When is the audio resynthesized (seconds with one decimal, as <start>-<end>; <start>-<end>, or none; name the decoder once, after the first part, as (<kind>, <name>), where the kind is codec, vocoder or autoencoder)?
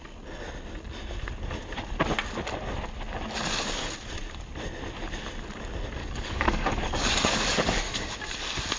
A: 6.0-8.1 (codec, DAC)